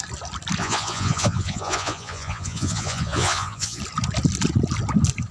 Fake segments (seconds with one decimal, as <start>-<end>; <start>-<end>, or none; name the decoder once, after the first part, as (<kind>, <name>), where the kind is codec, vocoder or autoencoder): 0.6-3.8 (vocoder, Vocos)